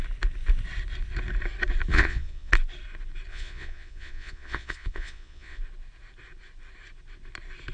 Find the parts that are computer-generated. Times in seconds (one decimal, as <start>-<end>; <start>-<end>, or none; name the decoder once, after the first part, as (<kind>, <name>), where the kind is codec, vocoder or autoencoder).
1.9-2.5 (vocoder, Vocos); 3.3-5.6